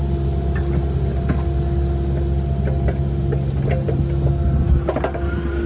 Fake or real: real